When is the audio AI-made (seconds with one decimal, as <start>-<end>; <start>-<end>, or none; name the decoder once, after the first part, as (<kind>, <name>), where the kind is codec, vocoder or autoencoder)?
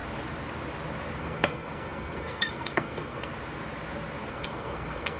1.2-3.3 (codec, SNAC); 4.3-5.2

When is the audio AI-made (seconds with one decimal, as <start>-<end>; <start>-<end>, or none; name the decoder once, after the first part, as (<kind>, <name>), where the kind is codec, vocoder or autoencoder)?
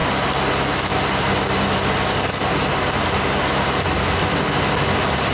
none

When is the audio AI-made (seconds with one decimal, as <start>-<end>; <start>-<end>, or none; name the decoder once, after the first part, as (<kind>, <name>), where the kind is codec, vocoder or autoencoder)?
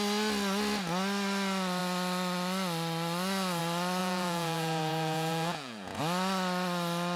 4.0-6.0 (vocoder, Vocos)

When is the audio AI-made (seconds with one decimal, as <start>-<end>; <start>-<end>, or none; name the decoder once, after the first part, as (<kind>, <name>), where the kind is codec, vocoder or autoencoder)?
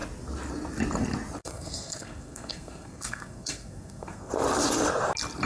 1.4-4.3 (codec, SNAC)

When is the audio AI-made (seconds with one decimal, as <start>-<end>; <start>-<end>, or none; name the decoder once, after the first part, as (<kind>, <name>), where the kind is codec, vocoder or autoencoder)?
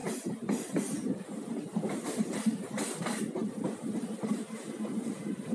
1.5-5.5 (vocoder, BigVGAN v2)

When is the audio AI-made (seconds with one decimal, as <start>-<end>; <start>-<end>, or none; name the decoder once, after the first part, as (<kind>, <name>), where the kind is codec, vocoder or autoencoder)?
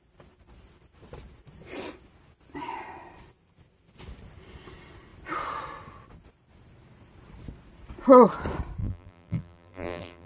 8.8-10.3 (vocoder, BigVGAN v2)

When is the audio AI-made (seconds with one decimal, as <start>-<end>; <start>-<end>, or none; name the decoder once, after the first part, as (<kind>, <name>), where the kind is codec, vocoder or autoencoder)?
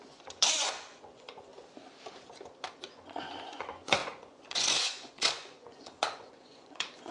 0.0-1.5 (vocoder, Vocos); 2.7-7.1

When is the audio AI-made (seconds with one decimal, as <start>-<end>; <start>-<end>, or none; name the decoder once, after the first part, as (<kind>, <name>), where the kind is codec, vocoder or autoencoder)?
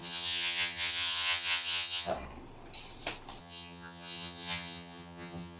0.0-2.1 (vocoder, HiFi-GAN); 3.4-5.6